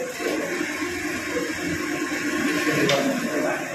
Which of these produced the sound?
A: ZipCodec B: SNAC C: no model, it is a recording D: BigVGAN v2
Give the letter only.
C